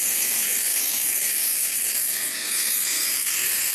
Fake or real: fake